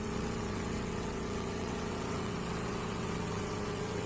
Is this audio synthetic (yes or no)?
yes